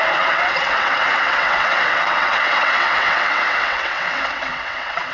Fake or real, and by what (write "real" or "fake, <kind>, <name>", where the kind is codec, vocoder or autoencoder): fake, vocoder, WaveNeXt